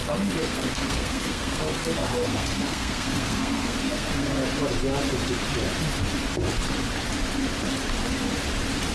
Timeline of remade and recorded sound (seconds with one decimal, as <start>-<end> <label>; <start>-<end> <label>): 0.0-4.3 remade; 4.3-8.9 recorded